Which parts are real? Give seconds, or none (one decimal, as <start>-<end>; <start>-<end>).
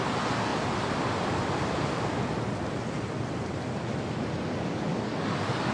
0.0-4.9